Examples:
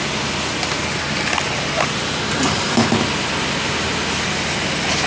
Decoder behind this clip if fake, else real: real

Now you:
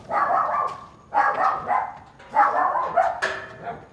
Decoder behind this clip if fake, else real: real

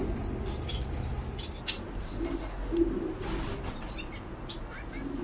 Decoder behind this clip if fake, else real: real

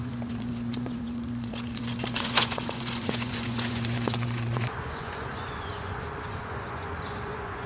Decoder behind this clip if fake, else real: fake, vocoder, Vocos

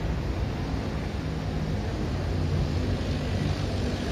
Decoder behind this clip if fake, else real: real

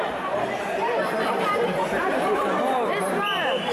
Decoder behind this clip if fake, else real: fake, vocoder, BigVGAN v2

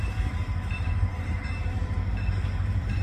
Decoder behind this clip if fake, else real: fake, vocoder, BigVGAN v2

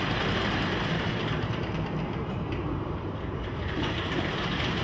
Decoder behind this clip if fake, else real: fake, vocoder, BigVGAN v2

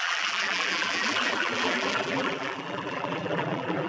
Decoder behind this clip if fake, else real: fake, vocoder, BigVGAN v2